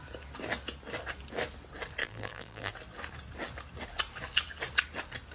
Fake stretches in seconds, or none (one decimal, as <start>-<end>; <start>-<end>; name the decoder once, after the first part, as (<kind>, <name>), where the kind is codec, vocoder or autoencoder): 2.0-2.7 (vocoder, BigVGAN v2)